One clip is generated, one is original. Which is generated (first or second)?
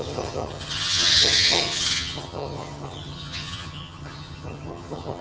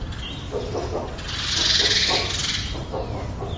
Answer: first